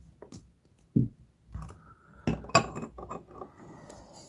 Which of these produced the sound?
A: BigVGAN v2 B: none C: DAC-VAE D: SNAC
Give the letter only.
B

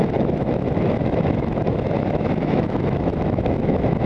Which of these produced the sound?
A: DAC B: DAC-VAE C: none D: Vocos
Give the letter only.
B